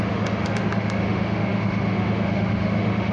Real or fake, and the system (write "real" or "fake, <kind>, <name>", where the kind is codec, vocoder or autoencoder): fake, autoencoder, DAC-VAE